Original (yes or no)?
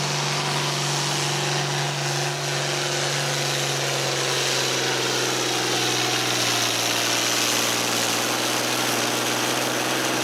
yes